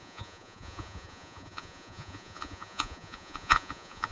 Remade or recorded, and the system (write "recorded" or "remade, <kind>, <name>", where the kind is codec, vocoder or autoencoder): remade, vocoder, Vocos